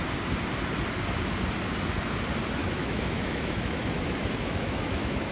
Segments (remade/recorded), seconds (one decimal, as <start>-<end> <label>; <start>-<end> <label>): 0.0-2.6 recorded; 2.6-5.3 remade